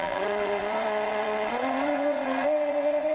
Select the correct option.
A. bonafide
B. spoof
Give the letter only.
B